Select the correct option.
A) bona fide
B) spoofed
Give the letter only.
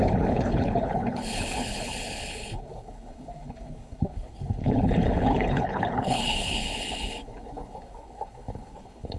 B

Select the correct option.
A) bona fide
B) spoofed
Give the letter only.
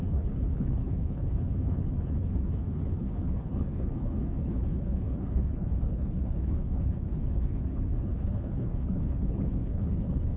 B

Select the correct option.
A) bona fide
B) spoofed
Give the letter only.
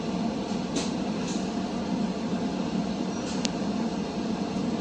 A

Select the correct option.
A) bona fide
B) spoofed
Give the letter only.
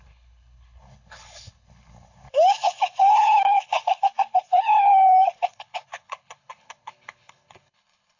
B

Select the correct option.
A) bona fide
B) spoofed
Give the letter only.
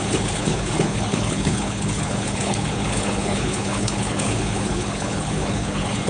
B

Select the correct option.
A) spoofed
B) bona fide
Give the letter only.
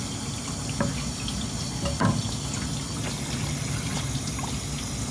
B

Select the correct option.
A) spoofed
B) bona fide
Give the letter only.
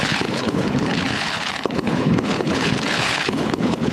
A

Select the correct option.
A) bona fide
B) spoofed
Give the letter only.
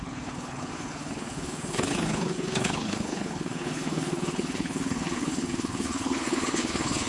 B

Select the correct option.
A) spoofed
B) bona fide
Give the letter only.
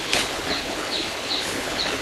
A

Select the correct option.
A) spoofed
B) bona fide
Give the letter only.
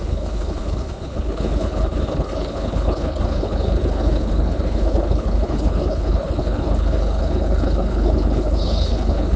A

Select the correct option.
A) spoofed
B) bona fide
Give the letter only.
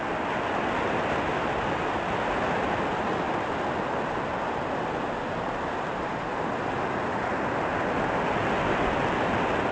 B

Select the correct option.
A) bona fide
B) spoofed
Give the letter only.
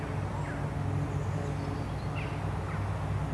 A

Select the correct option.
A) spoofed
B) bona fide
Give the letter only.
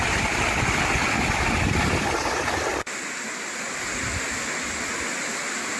B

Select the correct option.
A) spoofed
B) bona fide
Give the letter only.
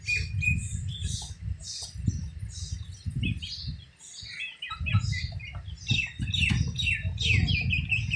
B